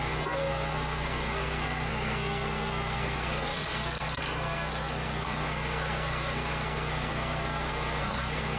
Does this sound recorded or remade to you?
remade